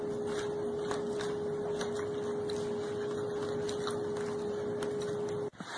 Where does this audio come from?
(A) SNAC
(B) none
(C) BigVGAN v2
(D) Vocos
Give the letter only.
B